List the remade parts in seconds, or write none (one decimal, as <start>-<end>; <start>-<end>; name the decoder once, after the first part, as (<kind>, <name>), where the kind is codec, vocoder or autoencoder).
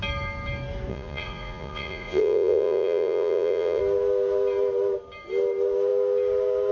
0.9-3.8 (vocoder, Vocos)